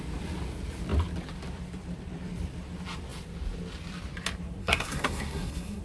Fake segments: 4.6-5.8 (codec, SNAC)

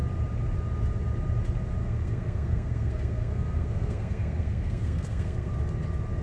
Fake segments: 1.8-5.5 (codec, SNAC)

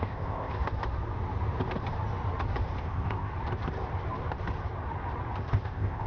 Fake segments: 0.0-0.6 (codec, ZipCodec); 2.8-3.3; 5.4-6.1

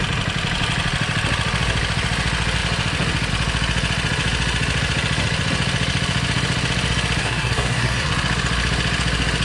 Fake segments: 7.2-8.1 (codec, SNAC)

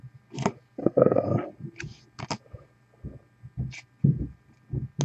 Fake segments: 0.8-1.5 (codec, SNAC)